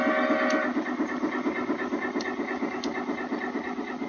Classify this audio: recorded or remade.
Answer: recorded